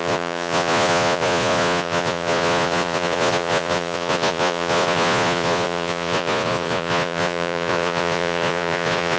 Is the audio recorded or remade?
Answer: remade